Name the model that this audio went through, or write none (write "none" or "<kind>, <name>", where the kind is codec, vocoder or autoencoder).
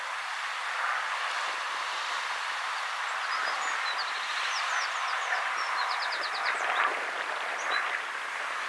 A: none